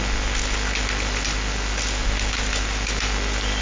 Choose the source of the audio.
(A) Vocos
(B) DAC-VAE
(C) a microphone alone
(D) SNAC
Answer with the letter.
C